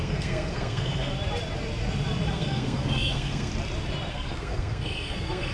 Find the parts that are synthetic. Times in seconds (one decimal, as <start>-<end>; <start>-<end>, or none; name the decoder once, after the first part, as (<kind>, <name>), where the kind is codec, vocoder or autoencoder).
0.0-1.1 (codec, SNAC); 2.3-3.5; 4.1-5.5